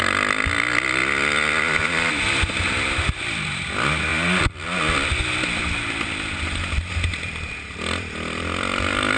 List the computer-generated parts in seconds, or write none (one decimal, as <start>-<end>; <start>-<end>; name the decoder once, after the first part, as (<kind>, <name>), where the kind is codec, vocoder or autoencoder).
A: 0.0-1.0 (vocoder, BigVGAN v2); 1.8-4.1; 6.9-9.2

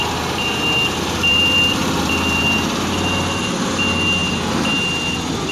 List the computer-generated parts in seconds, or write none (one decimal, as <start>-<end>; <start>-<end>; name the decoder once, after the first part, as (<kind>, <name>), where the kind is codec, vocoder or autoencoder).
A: 1.3-2.4 (vocoder, BigVGAN v2)

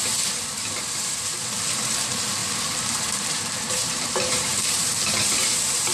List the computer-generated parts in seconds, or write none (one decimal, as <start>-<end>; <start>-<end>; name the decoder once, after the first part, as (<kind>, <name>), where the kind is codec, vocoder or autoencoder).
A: 0.0-5.9 (vocoder, BigVGAN v2)

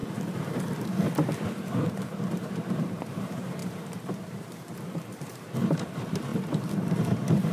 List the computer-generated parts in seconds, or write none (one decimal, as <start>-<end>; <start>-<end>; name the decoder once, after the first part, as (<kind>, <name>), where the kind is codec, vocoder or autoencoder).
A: 1.9-6.3 (vocoder, BigVGAN v2); 6.9-7.5

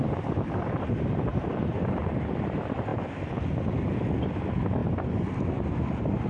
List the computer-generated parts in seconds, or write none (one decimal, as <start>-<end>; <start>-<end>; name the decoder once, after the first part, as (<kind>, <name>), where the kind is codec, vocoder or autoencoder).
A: 1.3-2.0 (vocoder, BigVGAN v2)